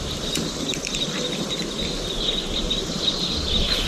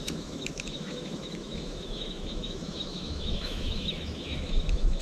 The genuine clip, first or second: first